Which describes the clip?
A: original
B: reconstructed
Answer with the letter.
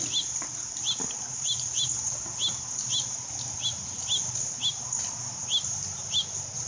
A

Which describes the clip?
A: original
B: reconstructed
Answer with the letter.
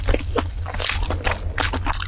A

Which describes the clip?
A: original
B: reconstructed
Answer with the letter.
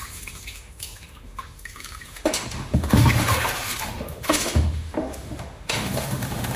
B